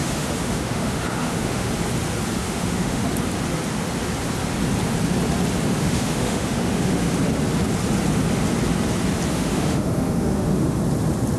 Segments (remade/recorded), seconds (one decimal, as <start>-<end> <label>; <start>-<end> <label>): 0.0-1.7 remade; 1.7-2.4 recorded; 2.4-3.0 remade; 3.0-5.8 recorded; 5.8-7.1 remade; 7.1-9.3 recorded; 9.3-10.8 remade; 10.8-11.4 recorded